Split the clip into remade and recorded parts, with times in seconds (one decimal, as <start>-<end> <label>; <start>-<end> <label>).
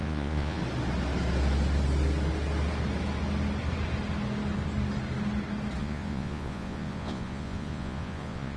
0.0-0.6 remade; 0.6-5.8 recorded; 5.8-8.6 remade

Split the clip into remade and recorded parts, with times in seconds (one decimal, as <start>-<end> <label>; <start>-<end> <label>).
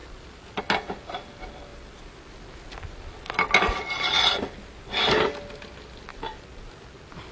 0.0-0.6 remade; 0.6-7.3 recorded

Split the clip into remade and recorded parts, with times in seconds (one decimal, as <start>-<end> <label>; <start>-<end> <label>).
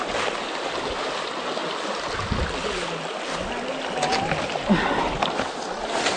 0.0-6.2 recorded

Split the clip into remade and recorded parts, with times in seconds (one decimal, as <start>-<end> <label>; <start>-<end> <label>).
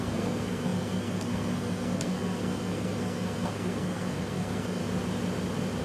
0.0-4.8 remade; 4.8-5.8 recorded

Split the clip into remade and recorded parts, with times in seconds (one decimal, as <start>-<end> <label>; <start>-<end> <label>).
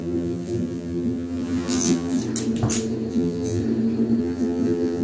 0.0-2.2 remade; 2.2-3.1 recorded; 3.1-3.6 remade; 3.6-4.2 recorded; 4.2-5.0 remade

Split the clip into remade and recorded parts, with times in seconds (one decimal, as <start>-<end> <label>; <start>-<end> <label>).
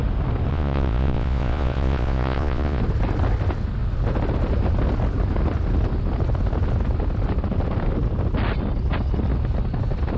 0.0-0.5 recorded; 0.5-2.8 remade; 2.8-10.2 recorded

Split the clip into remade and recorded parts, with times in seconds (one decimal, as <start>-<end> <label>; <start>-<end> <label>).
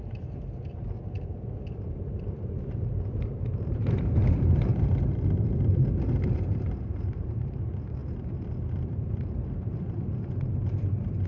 0.0-4.2 remade; 4.2-6.5 recorded; 6.5-8.0 remade; 8.0-8.7 recorded; 8.7-11.3 remade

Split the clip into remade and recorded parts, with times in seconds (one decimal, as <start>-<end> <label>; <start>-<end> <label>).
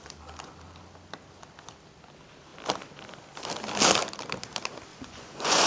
0.0-4.9 recorded; 4.9-5.7 remade